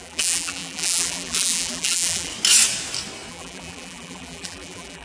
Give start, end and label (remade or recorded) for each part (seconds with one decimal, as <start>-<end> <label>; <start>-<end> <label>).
0.0-2.3 remade; 2.3-3.3 recorded; 3.3-5.0 remade